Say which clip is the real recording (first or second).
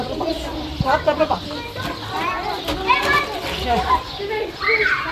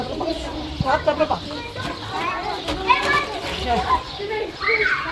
first